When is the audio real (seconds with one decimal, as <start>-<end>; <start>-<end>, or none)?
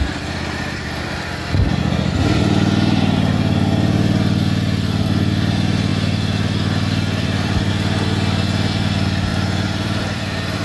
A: 1.5-5.9; 7.7-9.3